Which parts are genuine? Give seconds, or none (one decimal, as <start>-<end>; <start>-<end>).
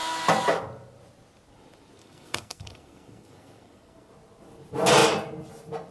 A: 0.0-2.0; 4.1-5.9